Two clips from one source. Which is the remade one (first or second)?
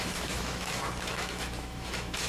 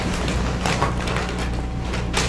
first